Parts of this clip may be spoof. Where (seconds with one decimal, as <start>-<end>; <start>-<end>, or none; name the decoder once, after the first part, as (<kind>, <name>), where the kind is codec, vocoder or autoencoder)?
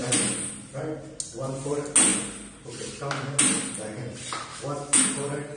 4.5-5.1 (autoencoder, DAC-VAE)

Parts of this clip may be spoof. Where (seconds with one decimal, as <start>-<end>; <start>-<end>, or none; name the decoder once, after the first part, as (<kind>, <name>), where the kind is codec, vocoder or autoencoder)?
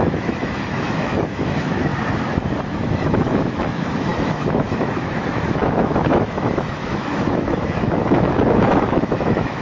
0.0-1.9 (autoencoder, DAC-VAE); 2.6-9.6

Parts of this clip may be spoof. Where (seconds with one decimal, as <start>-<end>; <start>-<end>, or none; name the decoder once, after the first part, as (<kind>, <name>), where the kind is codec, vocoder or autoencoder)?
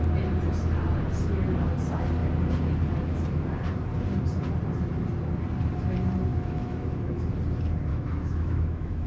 6.3-7.3 (autoencoder, DAC-VAE); 7.9-9.1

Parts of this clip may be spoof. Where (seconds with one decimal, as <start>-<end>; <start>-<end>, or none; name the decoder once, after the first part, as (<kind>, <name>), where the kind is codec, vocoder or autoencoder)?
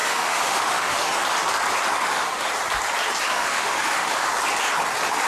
0.0-1.1 (autoencoder, DAC-VAE); 2.0-2.5; 3.3-4.3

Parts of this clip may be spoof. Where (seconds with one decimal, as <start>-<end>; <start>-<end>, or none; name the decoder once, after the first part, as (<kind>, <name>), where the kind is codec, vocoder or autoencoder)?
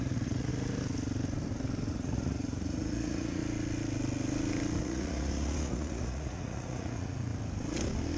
0.0-0.5 (vocoder, Vocos); 1.9-3.4; 4.8-7.3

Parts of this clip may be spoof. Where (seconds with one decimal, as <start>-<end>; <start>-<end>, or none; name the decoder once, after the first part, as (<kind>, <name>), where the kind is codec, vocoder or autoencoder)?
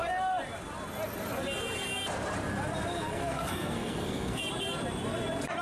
2.9-4.4 (codec, SNAC)